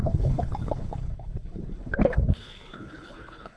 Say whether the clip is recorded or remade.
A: remade